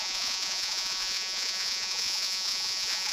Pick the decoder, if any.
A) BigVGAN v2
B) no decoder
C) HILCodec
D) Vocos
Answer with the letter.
D